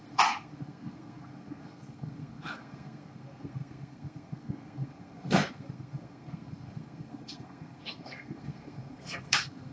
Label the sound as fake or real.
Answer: fake